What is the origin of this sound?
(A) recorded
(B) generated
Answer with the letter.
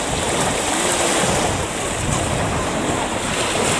A